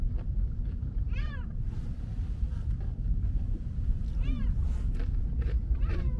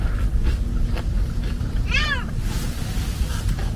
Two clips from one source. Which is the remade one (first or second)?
first